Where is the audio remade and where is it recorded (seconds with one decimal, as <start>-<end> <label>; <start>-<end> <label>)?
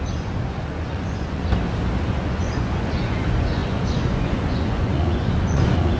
0.0-1.4 remade; 1.4-2.1 recorded; 2.1-6.0 remade